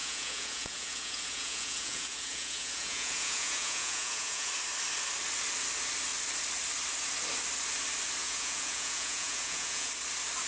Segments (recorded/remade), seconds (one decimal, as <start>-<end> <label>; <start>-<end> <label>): 0.0-4.5 remade; 4.5-8.2 recorded; 8.2-9.9 remade; 9.9-10.5 recorded